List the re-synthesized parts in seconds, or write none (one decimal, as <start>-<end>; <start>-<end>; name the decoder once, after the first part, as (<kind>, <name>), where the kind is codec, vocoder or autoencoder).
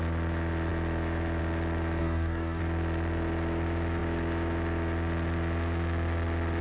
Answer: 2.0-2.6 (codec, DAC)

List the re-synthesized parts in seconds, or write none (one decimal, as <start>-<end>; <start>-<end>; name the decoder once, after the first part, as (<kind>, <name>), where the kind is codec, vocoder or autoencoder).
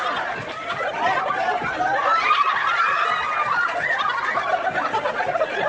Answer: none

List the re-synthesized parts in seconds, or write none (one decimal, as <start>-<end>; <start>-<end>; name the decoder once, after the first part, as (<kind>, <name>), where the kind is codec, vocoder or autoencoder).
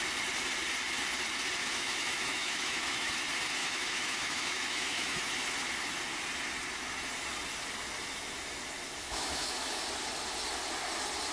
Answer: 1.6-3.1 (autoencoder, DAC-VAE); 3.6-5.3; 9.0-9.8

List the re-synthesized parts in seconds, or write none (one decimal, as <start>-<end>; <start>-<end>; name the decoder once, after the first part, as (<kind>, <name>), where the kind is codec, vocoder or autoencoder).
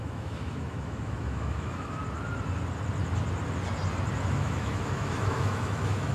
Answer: 0.0-2.0 (autoencoder, DAC-VAE); 4.3-6.1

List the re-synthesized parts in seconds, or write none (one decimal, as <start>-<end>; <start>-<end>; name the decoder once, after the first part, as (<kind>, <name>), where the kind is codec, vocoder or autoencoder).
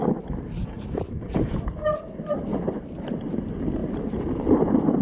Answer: 0.6-2.0 (vocoder, BigVGAN v2); 2.5-3.1; 3.8-4.3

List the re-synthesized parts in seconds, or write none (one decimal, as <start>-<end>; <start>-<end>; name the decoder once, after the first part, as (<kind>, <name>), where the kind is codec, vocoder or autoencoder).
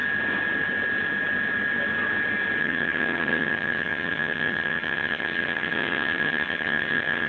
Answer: 2.6-7.3 (vocoder, HiFi-GAN)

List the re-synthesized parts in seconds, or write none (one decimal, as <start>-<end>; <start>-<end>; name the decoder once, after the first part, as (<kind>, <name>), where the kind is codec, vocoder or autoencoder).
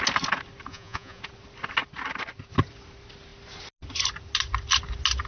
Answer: 0.7-1.2 (vocoder, Vocos)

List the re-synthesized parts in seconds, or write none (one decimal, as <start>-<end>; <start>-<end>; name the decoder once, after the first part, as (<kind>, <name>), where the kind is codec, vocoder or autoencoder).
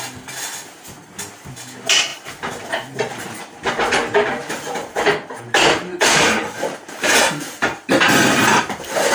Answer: 4.4-8.6 (vocoder, BigVGAN v2)